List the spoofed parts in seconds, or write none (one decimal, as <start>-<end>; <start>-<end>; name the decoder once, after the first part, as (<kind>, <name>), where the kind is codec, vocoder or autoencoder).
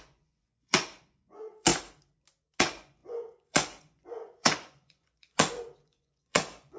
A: 0.0-1.7 (vocoder, Vocos); 2.6-6.8